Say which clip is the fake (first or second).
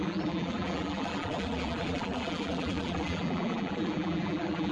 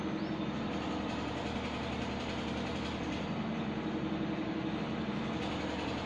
first